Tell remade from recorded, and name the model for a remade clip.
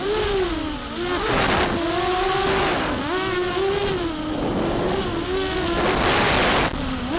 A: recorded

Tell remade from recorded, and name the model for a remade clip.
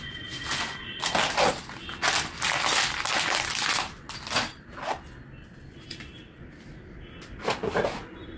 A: recorded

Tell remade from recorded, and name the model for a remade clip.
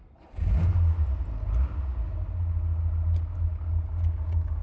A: recorded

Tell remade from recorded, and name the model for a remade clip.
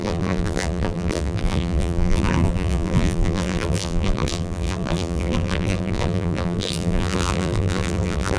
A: remade, vocoder, BigVGAN v2